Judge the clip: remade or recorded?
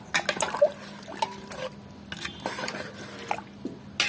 recorded